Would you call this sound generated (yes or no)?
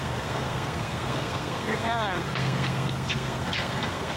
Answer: yes